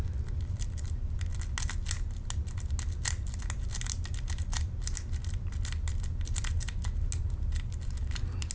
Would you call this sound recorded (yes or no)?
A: yes